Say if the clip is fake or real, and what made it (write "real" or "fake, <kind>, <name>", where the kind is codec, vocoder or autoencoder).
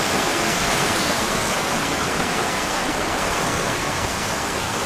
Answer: fake, codec, SNAC